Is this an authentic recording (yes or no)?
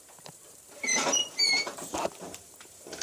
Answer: no